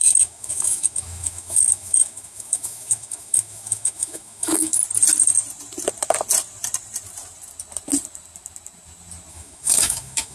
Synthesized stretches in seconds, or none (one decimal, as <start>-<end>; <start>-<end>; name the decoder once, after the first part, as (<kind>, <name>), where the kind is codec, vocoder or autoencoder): 0.0-4.8 (autoencoder, DAC-VAE); 9.3-10.3